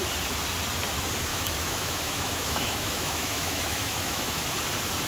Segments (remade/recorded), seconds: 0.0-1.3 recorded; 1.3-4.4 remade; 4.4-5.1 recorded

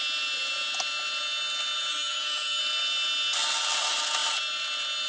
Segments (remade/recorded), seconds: 0.0-1.9 recorded; 1.9-2.6 remade; 2.6-5.1 recorded

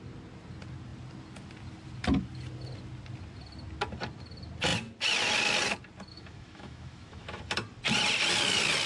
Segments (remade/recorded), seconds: 0.0-6.1 recorded; 6.1-7.4 remade; 7.4-8.9 recorded

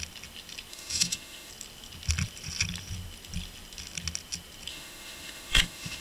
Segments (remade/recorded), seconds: 0.0-0.7 recorded; 0.7-1.5 remade; 1.5-4.7 recorded; 4.7-6.0 remade